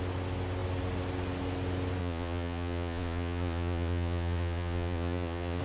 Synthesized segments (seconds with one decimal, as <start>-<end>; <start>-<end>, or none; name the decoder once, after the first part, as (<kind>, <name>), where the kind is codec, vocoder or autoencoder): 2.0-5.6 (vocoder, Vocos)